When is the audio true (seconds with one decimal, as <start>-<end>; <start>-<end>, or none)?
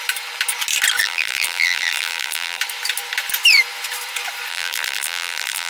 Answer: 0.0-1.0; 2.6-4.5